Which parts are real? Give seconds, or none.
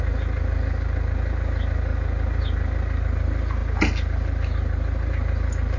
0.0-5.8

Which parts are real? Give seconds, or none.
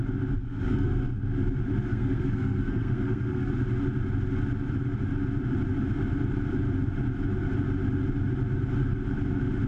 0.0-0.4; 1.2-1.9; 3.5-9.7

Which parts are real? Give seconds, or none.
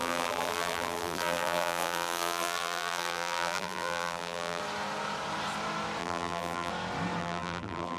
4.6-6.0; 6.7-7.2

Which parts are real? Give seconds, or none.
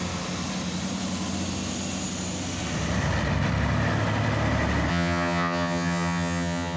0.0-4.9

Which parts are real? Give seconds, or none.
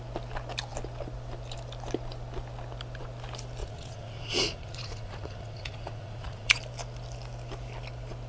0.0-3.6; 6.6-8.3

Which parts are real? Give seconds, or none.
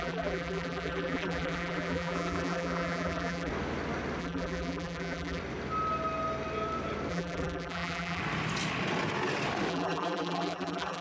3.5-4.2; 5.4-7.1; 8.2-9.7